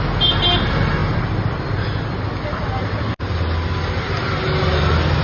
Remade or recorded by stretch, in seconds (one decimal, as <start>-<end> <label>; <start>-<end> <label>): 0.0-5.2 recorded